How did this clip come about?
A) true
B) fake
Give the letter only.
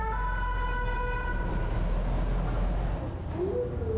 A